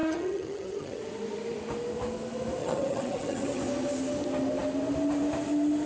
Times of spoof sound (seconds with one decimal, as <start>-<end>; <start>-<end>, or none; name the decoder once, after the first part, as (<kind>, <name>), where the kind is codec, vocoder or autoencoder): 0.0-1.0 (vocoder, HiFi-GAN); 2.6-3.6